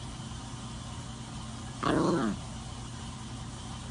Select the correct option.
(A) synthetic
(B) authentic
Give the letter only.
B